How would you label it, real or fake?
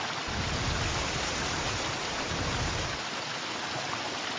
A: real